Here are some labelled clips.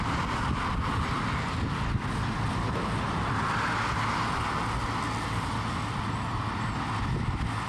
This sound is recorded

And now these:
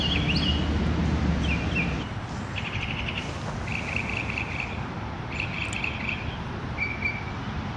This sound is recorded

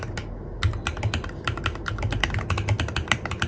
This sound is recorded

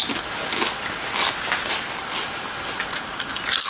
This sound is recorded